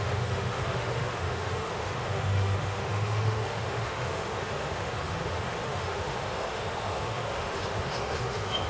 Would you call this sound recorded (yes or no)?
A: no